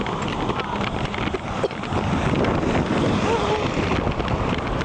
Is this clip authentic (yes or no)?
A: yes